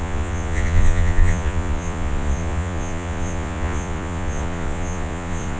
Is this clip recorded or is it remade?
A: remade